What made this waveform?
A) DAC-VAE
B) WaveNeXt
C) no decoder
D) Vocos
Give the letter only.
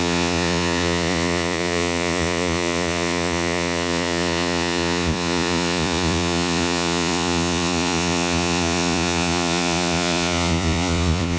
D